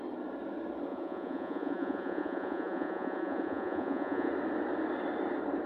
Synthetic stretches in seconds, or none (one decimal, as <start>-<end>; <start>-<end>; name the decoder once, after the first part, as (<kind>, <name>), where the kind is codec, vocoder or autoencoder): 0.9-4.3 (vocoder, Vocos)